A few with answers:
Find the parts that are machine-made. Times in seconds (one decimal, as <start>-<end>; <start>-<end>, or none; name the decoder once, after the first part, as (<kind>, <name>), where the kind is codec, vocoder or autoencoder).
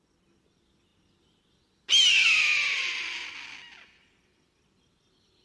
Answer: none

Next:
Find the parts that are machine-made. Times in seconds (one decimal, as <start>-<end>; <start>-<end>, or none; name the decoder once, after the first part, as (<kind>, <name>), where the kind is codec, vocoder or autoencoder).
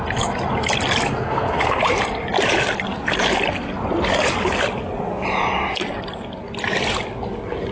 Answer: 1.1-1.8 (codec, SNAC)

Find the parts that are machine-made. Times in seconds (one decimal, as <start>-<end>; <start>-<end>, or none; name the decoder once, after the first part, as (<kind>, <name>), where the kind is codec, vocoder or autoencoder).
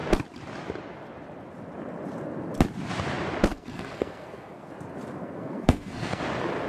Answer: 3.5-4.7 (codec, SNAC); 5.2-6.2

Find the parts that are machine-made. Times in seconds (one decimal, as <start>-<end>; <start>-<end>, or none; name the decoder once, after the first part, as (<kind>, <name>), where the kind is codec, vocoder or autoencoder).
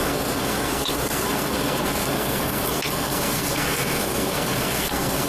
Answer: 0.0-5.3 (codec, SNAC)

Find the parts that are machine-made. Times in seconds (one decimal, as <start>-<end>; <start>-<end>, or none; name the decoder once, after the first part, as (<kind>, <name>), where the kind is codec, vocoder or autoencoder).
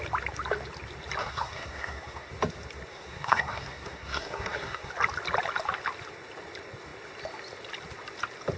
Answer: 1.2-2.3 (codec, SNAC); 2.9-4.9